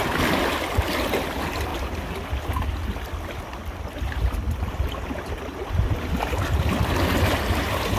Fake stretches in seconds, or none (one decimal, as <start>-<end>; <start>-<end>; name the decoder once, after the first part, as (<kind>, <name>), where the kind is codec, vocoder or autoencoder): none